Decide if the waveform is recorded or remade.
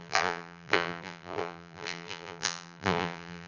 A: remade